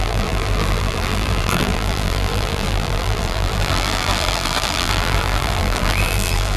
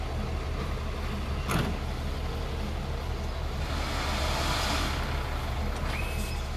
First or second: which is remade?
first